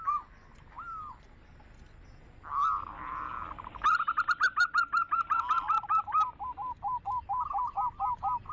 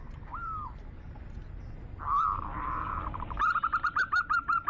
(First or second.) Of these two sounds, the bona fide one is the first